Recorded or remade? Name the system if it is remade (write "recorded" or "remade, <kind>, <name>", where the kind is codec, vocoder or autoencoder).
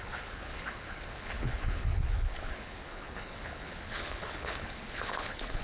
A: remade, codec, HILCodec